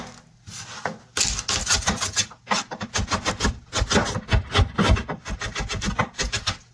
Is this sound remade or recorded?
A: recorded